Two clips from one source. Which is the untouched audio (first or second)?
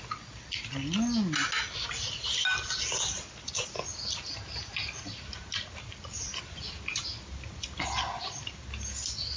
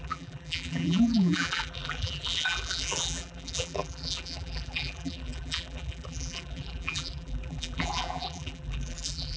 first